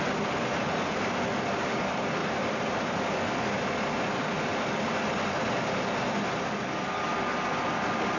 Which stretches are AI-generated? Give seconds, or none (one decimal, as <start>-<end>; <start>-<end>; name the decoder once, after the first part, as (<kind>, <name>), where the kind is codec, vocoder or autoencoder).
2.2-3.0 (vocoder, BigVGAN v2)

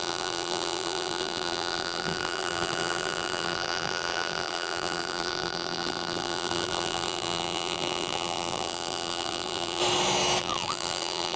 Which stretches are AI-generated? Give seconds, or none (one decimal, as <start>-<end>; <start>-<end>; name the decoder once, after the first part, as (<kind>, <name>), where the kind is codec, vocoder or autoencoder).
0.0-9.8 (vocoder, BigVGAN v2); 10.4-11.4